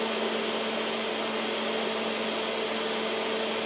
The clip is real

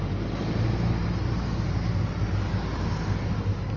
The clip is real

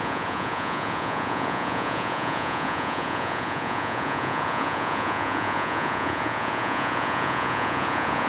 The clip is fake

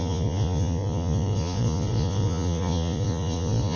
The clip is fake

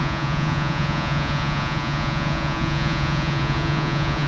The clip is fake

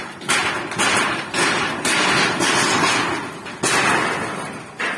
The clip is real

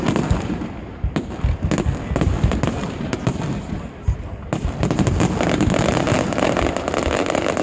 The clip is real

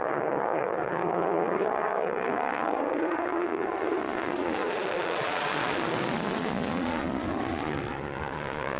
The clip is fake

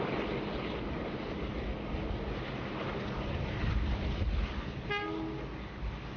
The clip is real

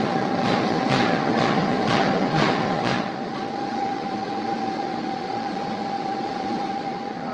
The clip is fake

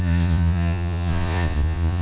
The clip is fake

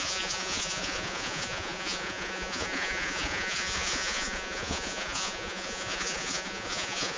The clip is fake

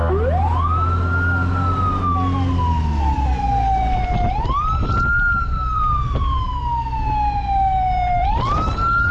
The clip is real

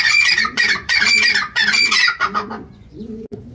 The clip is fake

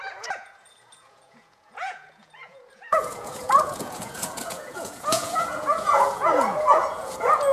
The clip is fake